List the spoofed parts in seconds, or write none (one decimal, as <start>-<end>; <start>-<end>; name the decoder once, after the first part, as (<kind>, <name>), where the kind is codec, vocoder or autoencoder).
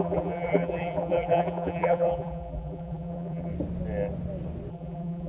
0.0-3.5 (vocoder, BigVGAN v2); 4.7-5.3